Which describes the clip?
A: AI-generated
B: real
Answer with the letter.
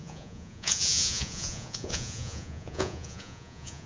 A